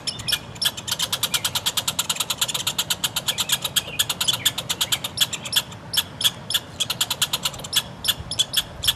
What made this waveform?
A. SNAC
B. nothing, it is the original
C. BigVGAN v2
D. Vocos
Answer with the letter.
B